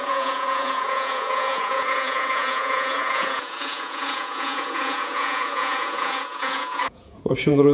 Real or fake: fake